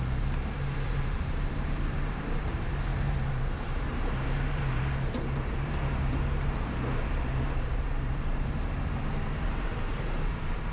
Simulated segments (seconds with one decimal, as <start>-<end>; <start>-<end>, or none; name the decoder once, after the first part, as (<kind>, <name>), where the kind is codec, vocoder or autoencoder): 0.0-10.7 (vocoder, BigVGAN v2)